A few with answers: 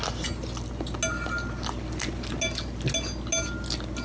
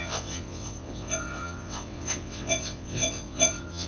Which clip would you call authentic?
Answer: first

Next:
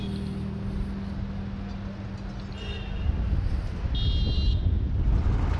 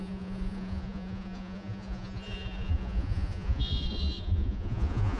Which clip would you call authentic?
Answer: first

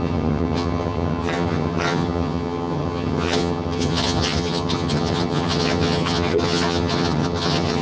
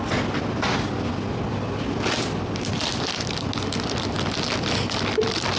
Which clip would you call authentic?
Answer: second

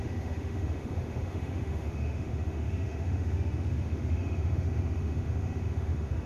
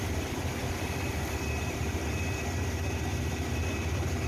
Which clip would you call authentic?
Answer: second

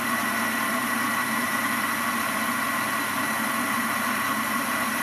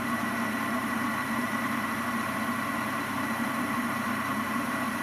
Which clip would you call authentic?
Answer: first